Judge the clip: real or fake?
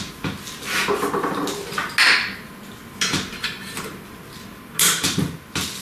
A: real